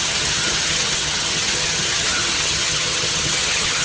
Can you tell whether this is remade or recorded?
remade